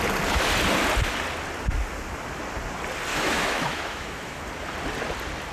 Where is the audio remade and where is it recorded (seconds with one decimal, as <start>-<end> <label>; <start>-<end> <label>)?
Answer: 0.0-3.1 recorded; 3.1-4.4 remade; 4.4-5.5 recorded